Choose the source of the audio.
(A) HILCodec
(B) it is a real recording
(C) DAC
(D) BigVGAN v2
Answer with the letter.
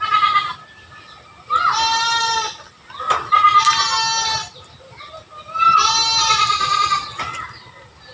B